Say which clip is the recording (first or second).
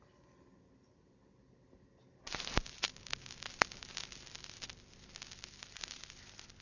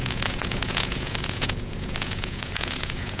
first